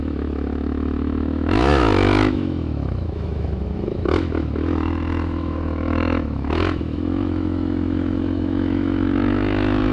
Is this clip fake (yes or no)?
yes